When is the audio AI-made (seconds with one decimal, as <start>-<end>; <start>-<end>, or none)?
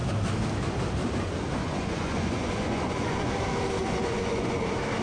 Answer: 1.6-3.3; 3.8-4.6